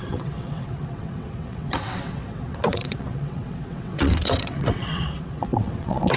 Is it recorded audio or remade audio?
remade